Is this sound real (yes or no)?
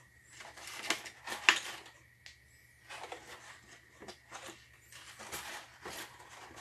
yes